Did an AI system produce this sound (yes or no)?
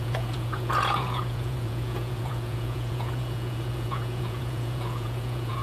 yes